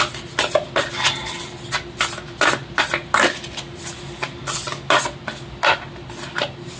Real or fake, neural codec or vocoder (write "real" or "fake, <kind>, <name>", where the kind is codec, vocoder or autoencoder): real